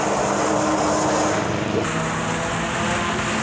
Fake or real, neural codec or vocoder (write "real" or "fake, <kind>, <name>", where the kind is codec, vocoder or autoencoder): real